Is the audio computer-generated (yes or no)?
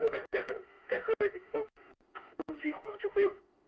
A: yes